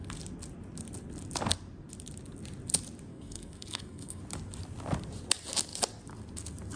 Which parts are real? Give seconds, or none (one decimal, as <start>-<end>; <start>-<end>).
0.0-3.1; 4.2-6.8